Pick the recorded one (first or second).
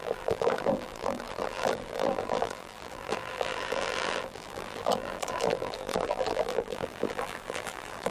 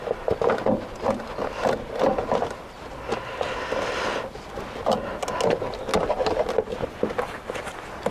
second